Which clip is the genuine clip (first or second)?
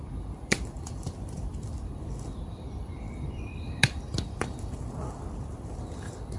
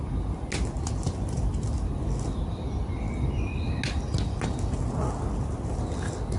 second